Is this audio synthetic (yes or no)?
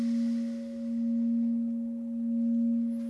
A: no